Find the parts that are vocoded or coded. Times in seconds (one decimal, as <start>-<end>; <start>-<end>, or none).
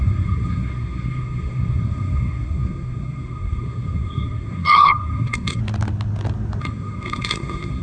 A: 0.0-5.6; 6.6-7.8